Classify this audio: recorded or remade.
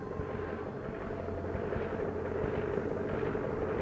remade